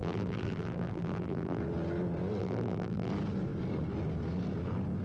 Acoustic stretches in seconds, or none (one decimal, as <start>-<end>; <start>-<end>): 1.6-2.4; 3.1-5.0